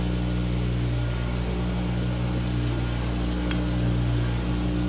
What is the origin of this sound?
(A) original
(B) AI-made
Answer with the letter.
A